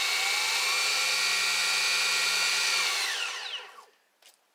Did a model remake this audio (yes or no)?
no